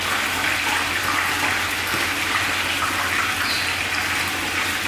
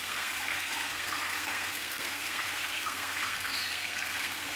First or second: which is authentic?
first